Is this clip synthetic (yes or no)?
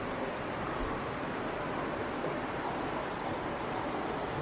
no